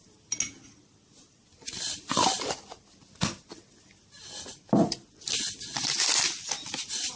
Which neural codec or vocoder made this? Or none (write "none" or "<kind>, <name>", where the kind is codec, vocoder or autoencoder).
none